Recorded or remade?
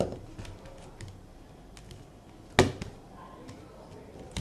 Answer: recorded